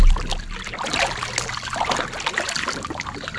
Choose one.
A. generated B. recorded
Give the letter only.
B